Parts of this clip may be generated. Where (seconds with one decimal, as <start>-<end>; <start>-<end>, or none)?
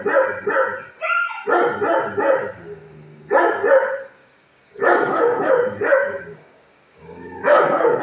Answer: 4.2-8.0